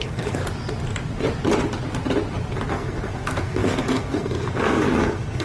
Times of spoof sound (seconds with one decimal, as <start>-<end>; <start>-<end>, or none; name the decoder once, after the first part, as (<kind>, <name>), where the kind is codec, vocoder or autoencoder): 0.0-0.4 (codec, SNAC); 2.7-5.4